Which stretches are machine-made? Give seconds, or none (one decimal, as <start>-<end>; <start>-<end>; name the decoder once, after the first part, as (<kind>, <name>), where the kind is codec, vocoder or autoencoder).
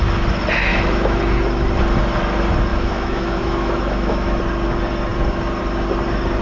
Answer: 0.7-1.2 (autoencoder, DAC-VAE); 2.7-4.4